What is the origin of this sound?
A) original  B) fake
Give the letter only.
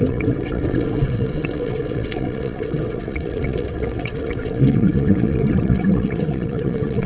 B